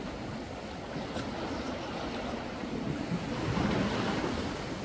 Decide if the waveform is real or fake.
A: real